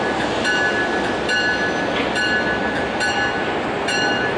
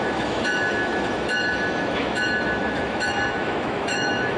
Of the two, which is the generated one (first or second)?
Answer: second